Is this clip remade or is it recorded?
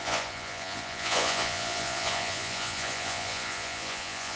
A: remade